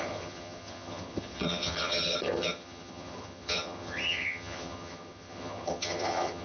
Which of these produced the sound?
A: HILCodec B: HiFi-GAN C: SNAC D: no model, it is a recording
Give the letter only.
B